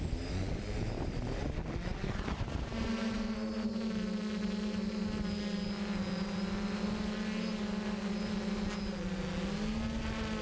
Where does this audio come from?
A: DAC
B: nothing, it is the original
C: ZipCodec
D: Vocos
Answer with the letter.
B